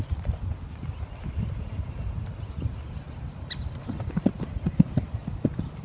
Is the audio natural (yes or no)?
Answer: yes